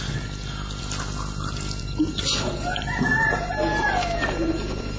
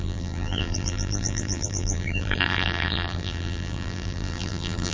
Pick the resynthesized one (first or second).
second